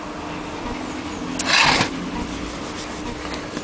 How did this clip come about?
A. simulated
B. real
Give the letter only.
B